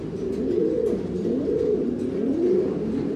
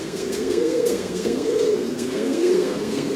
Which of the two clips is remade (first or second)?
second